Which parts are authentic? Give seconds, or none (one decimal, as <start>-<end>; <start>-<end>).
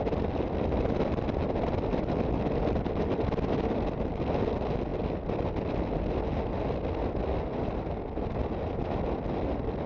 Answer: 0.0-9.9